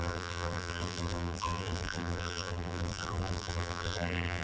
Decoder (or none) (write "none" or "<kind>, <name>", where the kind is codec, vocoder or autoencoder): vocoder, BigVGAN v2